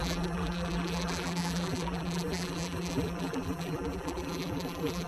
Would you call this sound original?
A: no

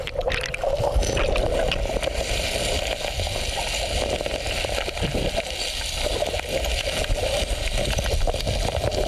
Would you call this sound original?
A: yes